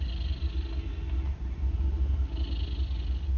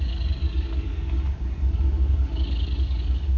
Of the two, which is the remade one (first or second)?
second